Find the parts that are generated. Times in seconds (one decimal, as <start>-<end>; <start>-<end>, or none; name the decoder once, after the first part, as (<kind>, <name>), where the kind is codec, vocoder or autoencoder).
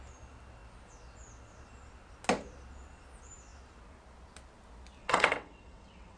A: 5.0-6.2 (vocoder, WaveNeXt)